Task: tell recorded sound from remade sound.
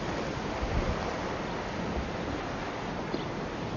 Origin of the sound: recorded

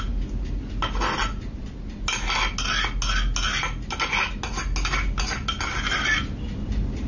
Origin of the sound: recorded